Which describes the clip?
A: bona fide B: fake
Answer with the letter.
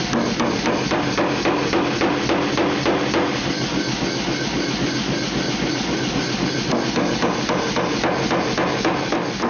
A